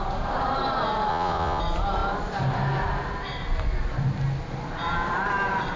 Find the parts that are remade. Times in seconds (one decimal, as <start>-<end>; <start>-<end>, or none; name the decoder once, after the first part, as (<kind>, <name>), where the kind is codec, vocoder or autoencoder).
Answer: 1.1-1.6 (vocoder, Vocos)